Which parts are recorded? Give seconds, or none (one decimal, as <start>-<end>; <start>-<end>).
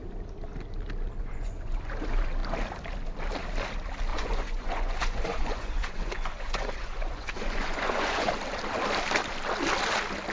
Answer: 0.0-1.2; 1.9-4.1; 8.3-10.3